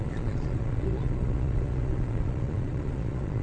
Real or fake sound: fake